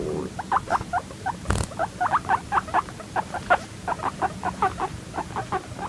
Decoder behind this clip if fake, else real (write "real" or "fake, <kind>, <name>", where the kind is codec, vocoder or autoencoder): real